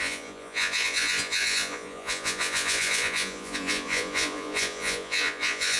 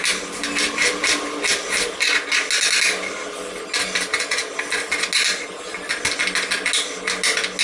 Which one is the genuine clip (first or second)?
second